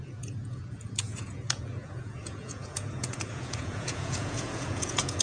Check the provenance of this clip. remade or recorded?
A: remade